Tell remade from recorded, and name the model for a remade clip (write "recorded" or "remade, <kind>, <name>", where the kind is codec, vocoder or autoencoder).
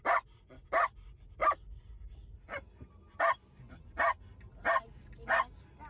recorded